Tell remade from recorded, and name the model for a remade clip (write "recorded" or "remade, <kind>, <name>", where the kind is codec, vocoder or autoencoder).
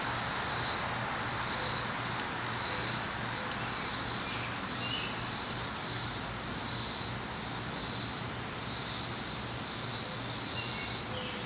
recorded